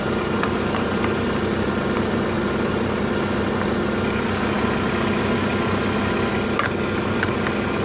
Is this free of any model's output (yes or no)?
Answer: yes